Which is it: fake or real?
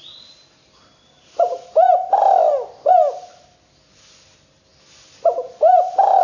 real